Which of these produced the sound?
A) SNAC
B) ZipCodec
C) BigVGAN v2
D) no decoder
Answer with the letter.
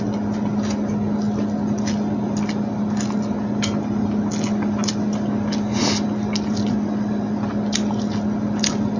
D